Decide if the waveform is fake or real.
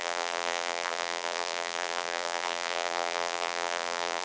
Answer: fake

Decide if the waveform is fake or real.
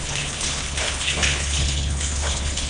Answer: fake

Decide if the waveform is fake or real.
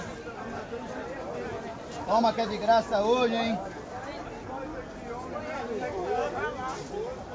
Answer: real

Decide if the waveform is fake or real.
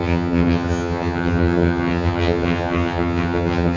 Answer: fake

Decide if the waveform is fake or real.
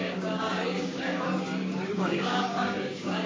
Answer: fake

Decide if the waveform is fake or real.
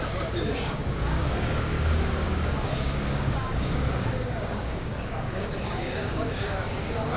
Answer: fake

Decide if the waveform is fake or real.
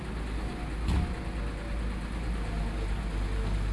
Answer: real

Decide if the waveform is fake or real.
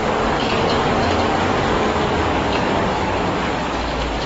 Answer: fake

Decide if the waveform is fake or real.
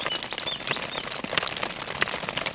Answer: real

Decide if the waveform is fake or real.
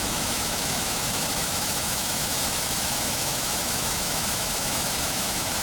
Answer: fake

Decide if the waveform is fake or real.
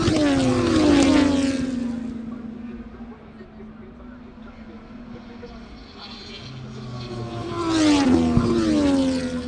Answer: real